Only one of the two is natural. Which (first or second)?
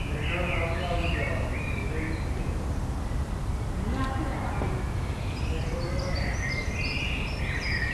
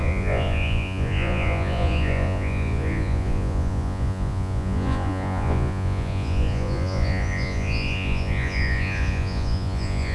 first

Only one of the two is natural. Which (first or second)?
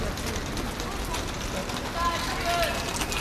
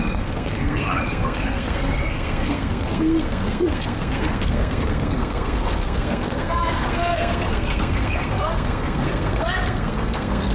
first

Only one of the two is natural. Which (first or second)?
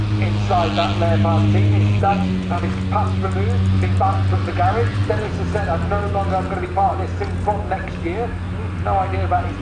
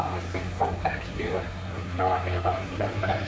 first